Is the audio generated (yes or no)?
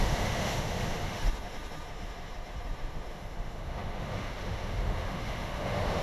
yes